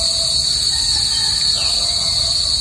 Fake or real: real